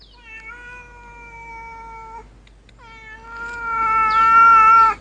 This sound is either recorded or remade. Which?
recorded